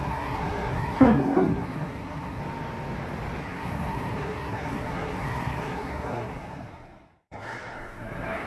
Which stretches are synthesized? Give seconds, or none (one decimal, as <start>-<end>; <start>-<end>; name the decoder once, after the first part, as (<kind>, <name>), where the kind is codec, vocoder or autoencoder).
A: 0.0-2.4 (codec, SNAC); 3.4-8.5